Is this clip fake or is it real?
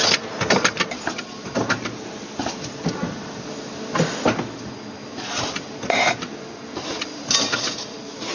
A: real